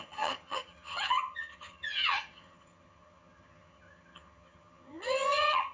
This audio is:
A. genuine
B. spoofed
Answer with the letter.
B